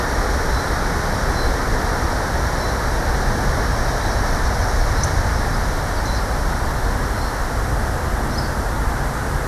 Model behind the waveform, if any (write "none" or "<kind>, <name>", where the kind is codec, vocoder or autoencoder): none